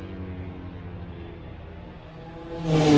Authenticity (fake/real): real